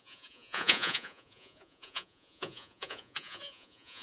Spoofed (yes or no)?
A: yes